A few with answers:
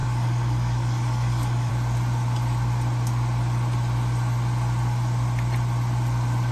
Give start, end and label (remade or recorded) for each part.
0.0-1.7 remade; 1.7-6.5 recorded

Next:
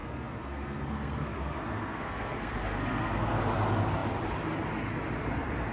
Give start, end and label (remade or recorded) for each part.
0.0-3.4 remade; 3.4-5.7 recorded

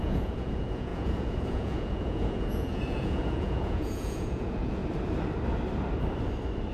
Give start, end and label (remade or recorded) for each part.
0.0-4.8 remade; 4.8-6.7 recorded

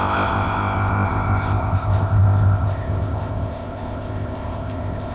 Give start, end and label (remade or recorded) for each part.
0.0-5.1 remade